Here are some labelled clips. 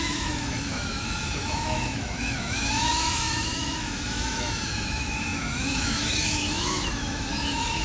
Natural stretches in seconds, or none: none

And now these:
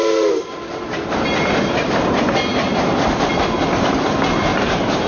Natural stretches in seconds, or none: 1.9-2.5; 3.3-4.5

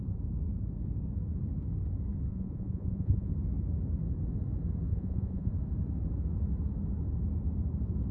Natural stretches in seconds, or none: 0.0-2.3; 3.3-4.9; 5.5-8.1

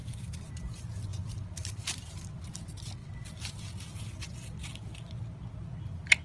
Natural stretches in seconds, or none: 0.5-1.1; 2.5-6.2

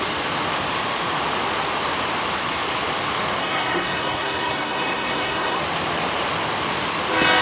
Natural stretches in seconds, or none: 0.0-3.4; 5.6-7.4

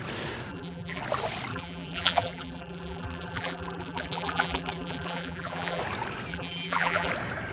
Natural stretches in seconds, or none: 0.0-0.5; 1.0-1.5; 5.8-6.3; 7.1-7.5

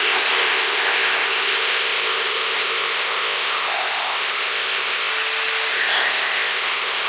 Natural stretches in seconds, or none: 5.1-5.7

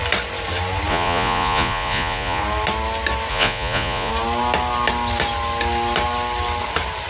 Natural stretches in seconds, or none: 0.0-0.9; 2.4-3.3; 4.1-7.1